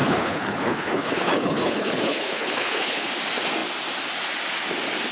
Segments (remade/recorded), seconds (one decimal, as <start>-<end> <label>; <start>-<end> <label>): 0.0-3.1 remade; 3.1-5.1 recorded